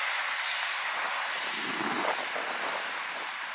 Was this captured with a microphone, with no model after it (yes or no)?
yes